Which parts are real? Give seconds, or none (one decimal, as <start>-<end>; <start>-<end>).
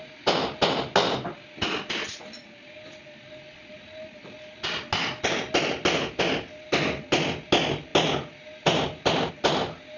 0.0-10.0